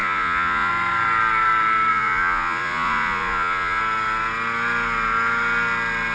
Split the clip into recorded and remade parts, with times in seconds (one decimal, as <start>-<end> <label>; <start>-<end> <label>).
0.0-0.7 remade; 0.7-1.9 recorded; 1.9-3.8 remade; 3.8-6.1 recorded